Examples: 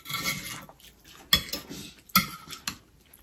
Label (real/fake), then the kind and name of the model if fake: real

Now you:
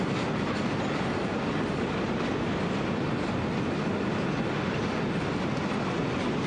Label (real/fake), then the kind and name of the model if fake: real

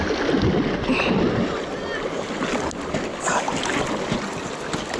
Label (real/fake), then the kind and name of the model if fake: real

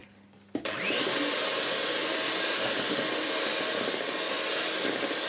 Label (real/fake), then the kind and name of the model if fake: real